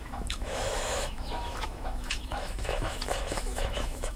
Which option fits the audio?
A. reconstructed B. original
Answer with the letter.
A